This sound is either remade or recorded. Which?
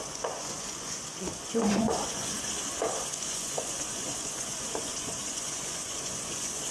remade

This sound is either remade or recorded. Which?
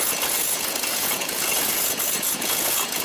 remade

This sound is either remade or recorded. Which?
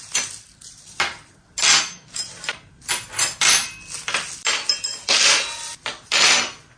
recorded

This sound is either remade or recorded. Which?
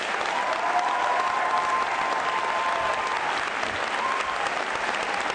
recorded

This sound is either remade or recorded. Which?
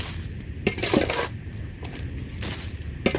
recorded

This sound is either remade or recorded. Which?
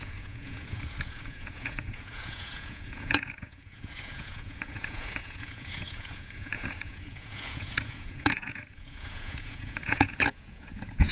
remade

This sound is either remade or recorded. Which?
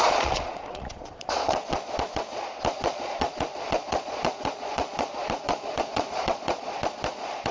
remade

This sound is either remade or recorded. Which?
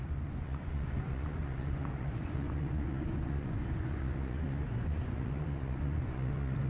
remade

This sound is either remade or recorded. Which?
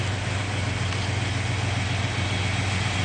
recorded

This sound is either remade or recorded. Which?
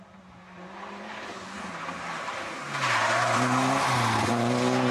recorded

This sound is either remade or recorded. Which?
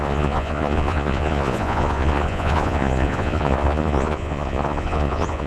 remade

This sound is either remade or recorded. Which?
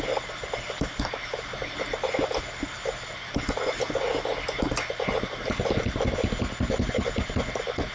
recorded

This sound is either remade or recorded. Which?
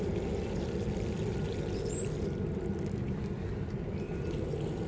recorded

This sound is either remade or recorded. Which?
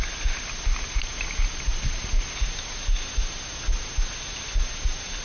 recorded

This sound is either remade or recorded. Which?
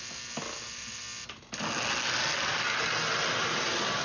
recorded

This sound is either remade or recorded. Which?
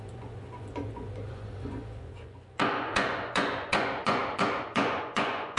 remade